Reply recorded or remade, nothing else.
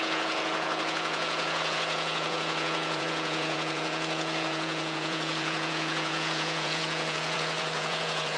remade